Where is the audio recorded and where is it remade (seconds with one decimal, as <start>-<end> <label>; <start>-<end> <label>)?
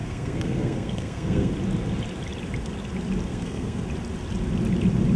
0.0-1.5 remade; 1.5-3.3 recorded; 3.3-3.8 remade; 3.8-5.2 recorded